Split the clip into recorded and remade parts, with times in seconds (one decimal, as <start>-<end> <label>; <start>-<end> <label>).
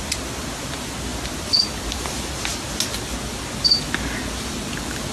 0.0-5.1 recorded